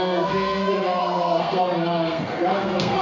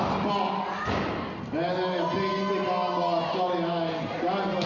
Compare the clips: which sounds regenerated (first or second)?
first